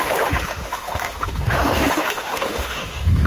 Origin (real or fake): fake